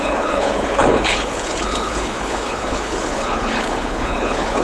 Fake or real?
fake